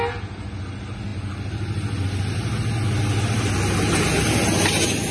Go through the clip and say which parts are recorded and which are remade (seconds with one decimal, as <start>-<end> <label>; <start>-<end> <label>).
0.0-5.1 recorded